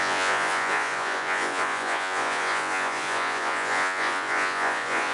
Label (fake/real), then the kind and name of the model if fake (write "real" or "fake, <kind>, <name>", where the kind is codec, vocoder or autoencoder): fake, vocoder, Vocos